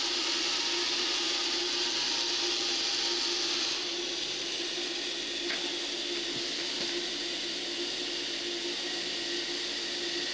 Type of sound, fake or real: real